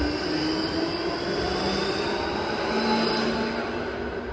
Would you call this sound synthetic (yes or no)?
no